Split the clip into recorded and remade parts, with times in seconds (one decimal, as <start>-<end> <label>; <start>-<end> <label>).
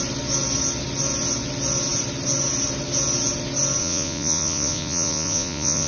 0.0-3.8 recorded; 3.8-5.9 remade